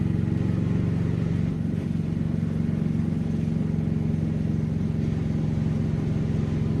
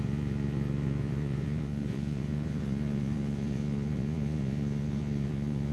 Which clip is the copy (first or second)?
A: second